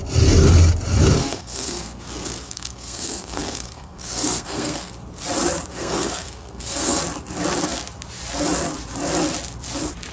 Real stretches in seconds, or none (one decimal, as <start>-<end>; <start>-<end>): 0.0-1.2; 4.9-5.7; 7.0-10.1